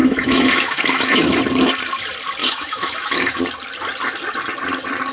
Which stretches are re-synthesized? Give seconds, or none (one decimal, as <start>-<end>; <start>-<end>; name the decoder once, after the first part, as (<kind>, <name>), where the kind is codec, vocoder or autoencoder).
0.0-1.4 (autoencoder, DAC-VAE); 2.4-3.4